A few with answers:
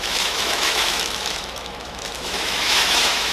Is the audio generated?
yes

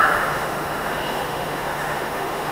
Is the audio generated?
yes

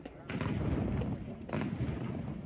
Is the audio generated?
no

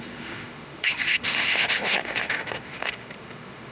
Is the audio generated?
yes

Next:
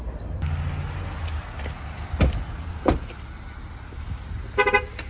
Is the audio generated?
no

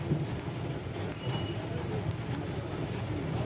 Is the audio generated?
no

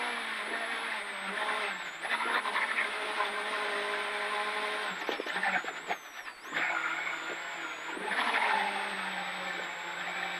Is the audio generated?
no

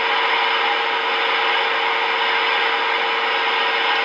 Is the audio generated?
no